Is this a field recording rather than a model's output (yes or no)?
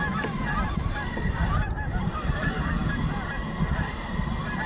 yes